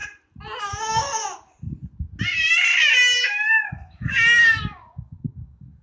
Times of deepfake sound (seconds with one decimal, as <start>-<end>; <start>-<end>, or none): 0.6-1.2; 3.6-5.8